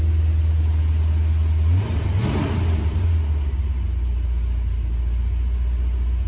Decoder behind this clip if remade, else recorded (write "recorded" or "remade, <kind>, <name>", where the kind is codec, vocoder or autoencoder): recorded